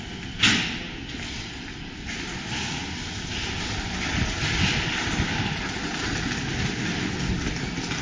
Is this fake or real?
real